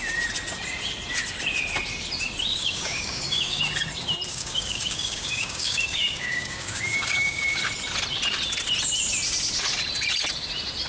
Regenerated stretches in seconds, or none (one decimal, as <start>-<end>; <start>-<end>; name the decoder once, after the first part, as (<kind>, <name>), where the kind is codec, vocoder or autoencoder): 2.5-3.6 (codec, DAC); 4.3-7.6